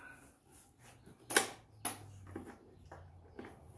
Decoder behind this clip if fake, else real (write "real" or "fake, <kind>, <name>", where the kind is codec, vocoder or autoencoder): real